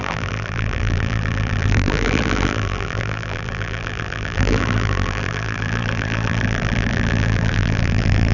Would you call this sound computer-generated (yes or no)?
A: yes